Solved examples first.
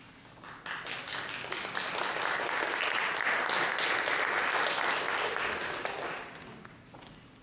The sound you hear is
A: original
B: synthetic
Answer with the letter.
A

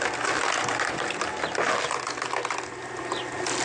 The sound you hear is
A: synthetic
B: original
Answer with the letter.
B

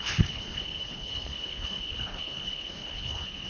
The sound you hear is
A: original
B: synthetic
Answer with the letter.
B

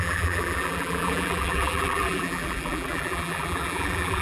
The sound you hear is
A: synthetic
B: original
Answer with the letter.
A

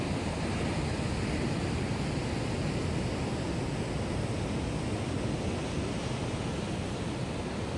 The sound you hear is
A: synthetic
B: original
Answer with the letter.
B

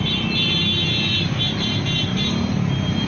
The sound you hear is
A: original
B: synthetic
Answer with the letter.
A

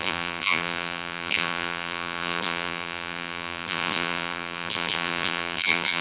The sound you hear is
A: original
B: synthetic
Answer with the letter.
B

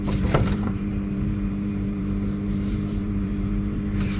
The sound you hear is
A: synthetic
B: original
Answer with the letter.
A